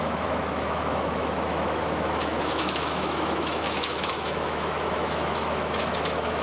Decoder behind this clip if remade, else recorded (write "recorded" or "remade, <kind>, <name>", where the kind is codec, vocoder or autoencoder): remade, autoencoder, DAC-VAE